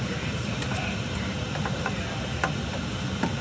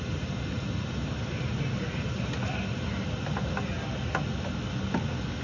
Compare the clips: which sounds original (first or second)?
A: second